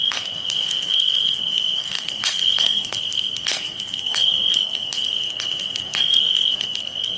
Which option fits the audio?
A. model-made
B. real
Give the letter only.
A